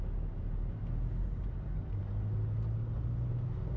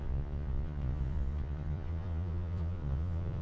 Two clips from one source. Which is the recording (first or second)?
first